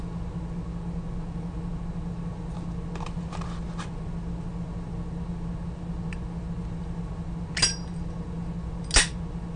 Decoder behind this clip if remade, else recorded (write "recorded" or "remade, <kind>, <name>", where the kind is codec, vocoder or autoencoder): recorded